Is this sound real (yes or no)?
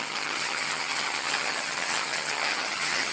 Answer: no